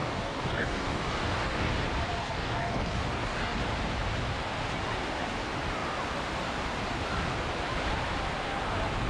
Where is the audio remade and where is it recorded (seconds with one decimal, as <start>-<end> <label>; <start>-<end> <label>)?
0.0-1.7 remade; 1.7-2.2 recorded; 2.2-3.6 remade; 3.6-9.1 recorded